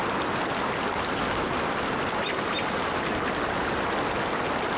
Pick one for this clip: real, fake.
real